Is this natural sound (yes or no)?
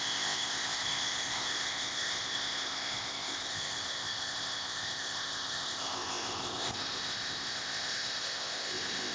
no